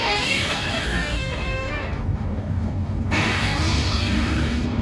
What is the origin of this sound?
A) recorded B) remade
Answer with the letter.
B